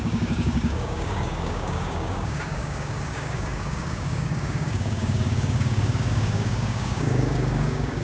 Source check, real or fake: fake